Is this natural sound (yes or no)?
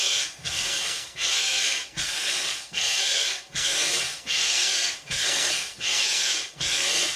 no